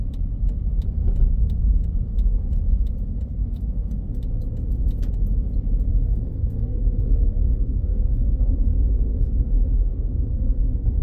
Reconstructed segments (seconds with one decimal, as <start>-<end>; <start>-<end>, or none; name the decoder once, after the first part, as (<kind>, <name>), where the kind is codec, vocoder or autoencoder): 3.3-4.2 (codec, SNAC); 5.9-11.0